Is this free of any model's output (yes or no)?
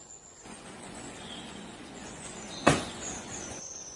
no